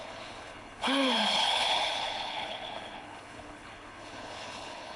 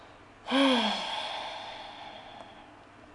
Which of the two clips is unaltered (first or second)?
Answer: second